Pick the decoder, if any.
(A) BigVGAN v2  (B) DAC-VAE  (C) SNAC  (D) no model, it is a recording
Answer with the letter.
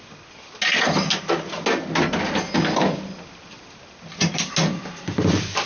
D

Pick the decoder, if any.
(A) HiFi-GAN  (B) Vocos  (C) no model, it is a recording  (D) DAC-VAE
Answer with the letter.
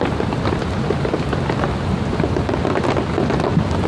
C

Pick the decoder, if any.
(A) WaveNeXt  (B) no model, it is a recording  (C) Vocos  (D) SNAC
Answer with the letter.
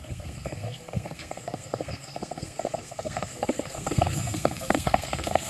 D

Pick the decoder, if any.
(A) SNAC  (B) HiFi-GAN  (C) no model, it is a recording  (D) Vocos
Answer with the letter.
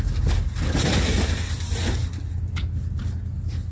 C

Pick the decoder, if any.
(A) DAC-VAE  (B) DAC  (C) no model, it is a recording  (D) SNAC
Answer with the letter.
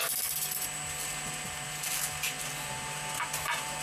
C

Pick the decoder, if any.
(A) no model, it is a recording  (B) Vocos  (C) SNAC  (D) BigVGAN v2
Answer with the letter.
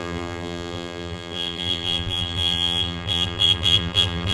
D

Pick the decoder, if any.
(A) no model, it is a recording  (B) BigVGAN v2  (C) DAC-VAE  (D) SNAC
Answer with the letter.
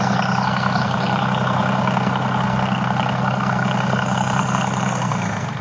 D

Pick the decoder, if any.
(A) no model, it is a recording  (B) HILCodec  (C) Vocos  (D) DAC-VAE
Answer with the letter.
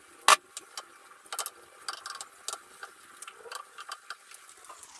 A